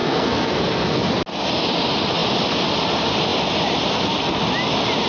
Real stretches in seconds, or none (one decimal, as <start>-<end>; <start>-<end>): 1.1-5.1

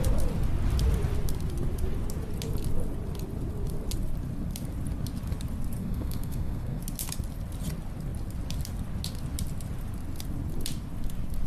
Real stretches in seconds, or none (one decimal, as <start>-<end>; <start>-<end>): 0.0-5.8; 6.8-11.5

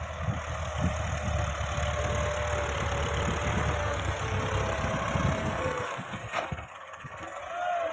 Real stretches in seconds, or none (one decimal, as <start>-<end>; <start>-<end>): 0.0-3.8; 4.4-5.4; 7.4-7.9

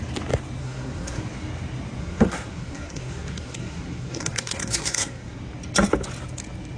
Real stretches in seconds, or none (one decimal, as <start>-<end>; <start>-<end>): 0.0-0.6; 1.2-2.0; 5.4-6.8